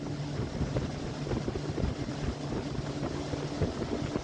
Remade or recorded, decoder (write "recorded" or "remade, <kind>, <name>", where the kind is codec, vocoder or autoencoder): recorded